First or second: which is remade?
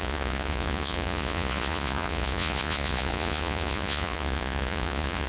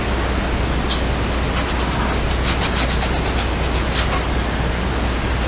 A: first